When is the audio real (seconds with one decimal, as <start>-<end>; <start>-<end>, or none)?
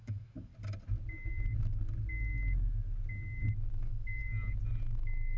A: 0.5-3.7; 4.2-4.8